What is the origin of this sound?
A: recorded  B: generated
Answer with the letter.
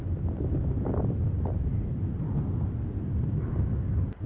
A